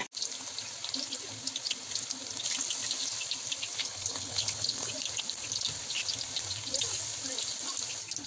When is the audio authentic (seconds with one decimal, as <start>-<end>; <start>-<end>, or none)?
0.0-3.8; 4.9-8.3